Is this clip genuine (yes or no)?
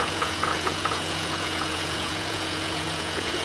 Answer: no